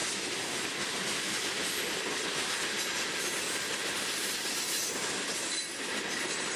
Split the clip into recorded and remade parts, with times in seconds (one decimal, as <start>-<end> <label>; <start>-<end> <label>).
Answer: 0.0-3.4 recorded; 3.4-4.8 remade; 4.8-5.3 recorded; 5.3-6.6 remade